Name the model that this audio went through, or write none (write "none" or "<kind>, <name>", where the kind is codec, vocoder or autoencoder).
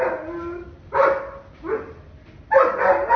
none